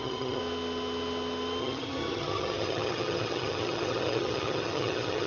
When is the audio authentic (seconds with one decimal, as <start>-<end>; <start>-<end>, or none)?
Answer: 0.4-1.6